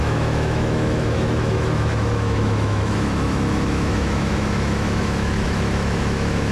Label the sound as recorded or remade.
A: remade